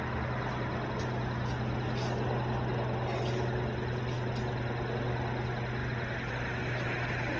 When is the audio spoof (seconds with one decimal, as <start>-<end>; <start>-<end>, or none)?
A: none